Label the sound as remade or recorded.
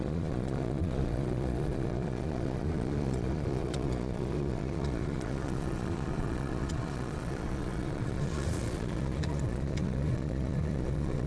remade